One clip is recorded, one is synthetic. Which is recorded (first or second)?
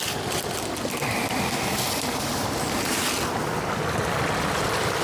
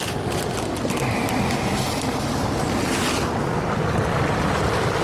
second